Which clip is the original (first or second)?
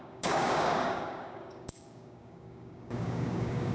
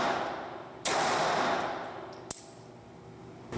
second